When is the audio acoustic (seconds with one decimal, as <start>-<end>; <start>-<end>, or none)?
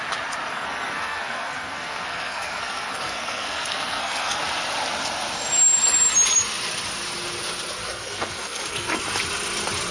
0.0-0.5; 4.4-7.8; 9.0-9.9